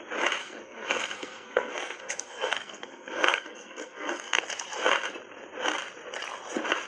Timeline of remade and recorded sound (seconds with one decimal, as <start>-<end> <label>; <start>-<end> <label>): 0.0-0.4 recorded; 0.4-4.4 remade; 4.4-6.9 recorded